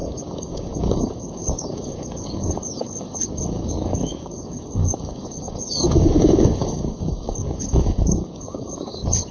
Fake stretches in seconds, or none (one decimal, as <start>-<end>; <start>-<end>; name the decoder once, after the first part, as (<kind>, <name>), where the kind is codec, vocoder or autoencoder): 0.0-9.3 (codec, DAC)